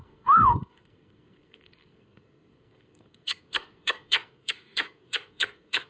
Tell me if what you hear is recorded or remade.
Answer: remade